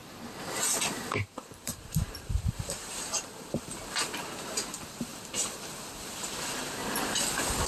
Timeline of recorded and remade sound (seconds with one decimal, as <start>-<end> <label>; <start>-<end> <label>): 0.0-0.9 recorded; 0.9-6.8 remade; 6.8-7.7 recorded